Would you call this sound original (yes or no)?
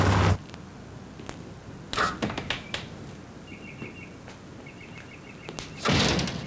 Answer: yes